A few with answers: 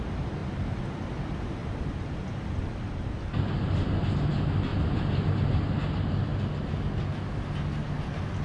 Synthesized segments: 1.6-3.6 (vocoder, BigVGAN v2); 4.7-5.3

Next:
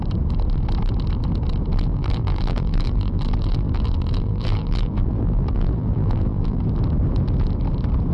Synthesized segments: 1.7-6.6 (vocoder, BigVGAN v2)

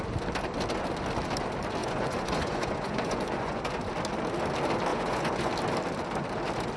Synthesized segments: 1.8-3.7 (vocoder, Vocos); 4.9-5.5

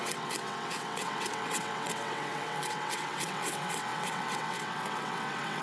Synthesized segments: 0.0-5.6 (vocoder, WaveNeXt)

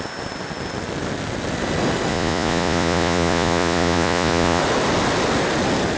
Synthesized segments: 2.1-4.6 (vocoder, Vocos)

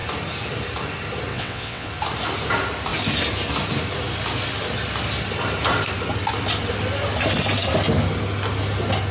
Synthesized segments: 1.3-1.9 (vocoder, WaveNeXt)

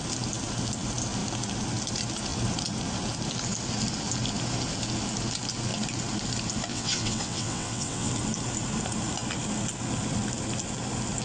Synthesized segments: 6.7-8.1 (vocoder, WaveNeXt)